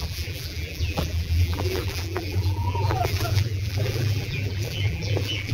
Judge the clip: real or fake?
fake